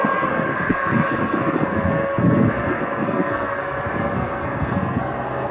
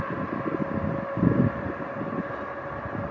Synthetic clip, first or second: first